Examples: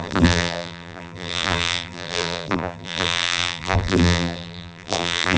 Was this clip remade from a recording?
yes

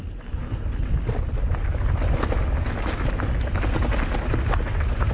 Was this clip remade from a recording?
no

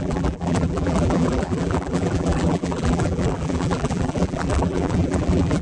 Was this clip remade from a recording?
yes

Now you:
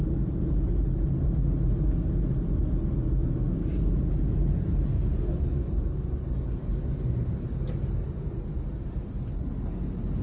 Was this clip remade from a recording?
no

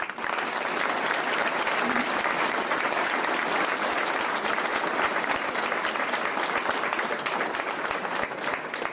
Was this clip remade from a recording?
no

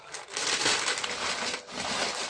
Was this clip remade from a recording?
no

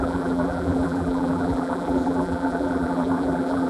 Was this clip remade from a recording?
yes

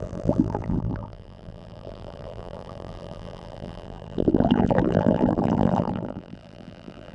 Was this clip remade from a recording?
yes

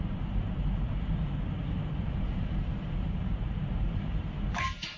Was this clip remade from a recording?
yes